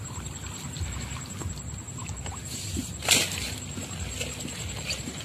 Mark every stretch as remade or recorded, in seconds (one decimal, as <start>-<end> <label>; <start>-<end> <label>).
0.0-5.2 recorded